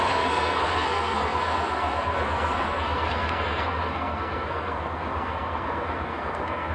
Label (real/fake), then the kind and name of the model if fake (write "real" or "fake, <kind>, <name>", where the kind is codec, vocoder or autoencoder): fake, codec, SNAC